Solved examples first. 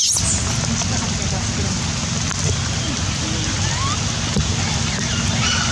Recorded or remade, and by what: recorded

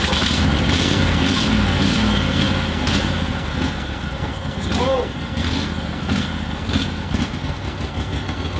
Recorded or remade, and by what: remade, codec, SNAC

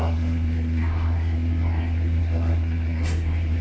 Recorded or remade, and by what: remade, codec, SNAC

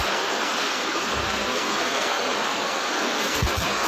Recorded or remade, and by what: remade, codec, SNAC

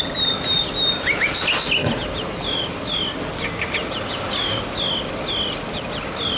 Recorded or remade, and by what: recorded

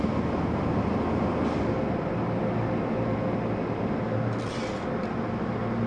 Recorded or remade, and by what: recorded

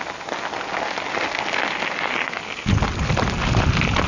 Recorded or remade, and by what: recorded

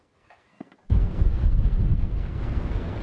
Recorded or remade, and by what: remade, codec, SNAC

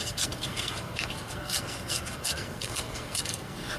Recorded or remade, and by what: remade, codec, SNAC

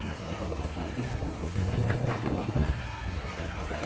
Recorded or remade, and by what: remade, codec, SNAC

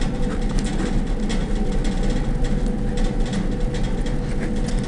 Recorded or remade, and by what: recorded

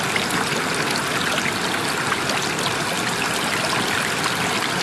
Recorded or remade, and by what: recorded